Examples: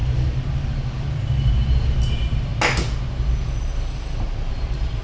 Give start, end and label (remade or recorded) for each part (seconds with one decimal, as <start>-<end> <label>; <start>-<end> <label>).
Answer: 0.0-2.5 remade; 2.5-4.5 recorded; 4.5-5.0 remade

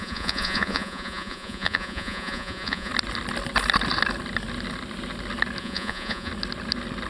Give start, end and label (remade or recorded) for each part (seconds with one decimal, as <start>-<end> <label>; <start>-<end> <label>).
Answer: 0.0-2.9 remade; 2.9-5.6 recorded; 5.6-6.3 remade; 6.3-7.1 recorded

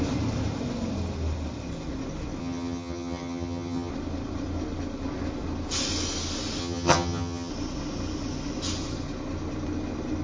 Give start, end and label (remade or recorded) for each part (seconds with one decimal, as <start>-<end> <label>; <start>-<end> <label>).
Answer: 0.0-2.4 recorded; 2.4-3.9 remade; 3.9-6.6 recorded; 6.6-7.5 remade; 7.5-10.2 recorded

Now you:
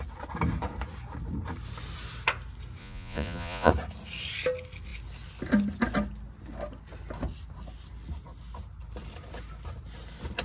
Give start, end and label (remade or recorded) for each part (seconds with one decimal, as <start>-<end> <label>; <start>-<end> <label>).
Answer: 0.0-2.8 recorded; 2.8-3.7 remade; 3.7-10.4 recorded